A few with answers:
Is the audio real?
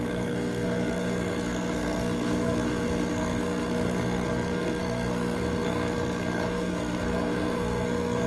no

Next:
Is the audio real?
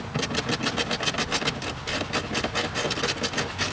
yes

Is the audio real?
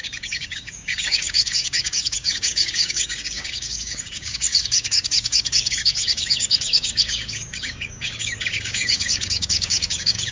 no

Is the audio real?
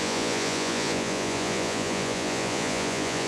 no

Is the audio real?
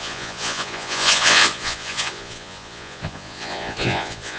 no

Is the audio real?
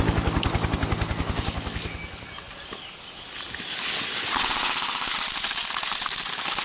yes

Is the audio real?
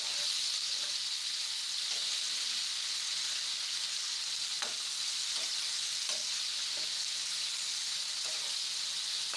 yes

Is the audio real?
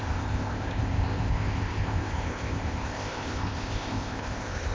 no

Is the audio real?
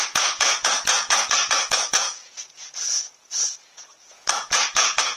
no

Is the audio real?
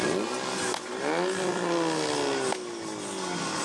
yes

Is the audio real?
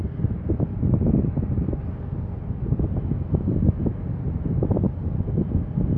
yes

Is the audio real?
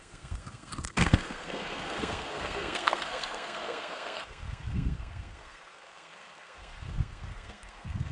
no